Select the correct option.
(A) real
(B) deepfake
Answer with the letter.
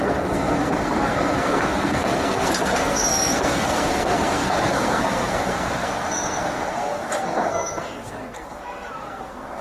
B